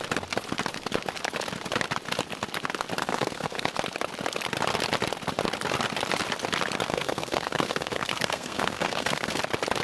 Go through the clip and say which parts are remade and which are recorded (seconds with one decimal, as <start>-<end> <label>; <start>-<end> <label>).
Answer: 0.0-3.0 recorded; 3.0-3.7 remade; 3.7-6.9 recorded; 6.9-9.4 remade; 9.4-9.8 recorded